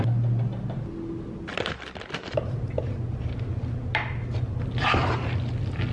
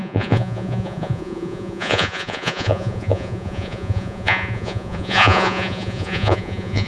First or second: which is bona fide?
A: first